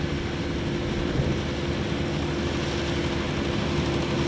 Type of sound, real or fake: real